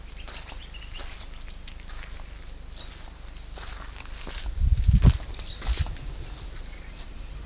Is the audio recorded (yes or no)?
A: yes